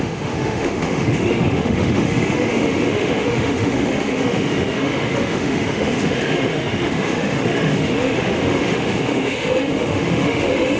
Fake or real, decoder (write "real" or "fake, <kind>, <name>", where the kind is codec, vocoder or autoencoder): fake, autoencoder, DAC-VAE